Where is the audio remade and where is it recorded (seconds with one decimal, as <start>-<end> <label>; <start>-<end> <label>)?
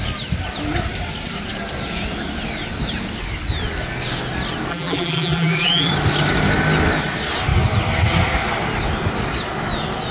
0.0-4.7 recorded; 4.7-5.9 remade; 5.9-10.1 recorded